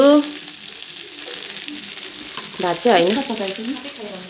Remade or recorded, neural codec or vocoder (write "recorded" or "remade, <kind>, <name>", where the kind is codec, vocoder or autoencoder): recorded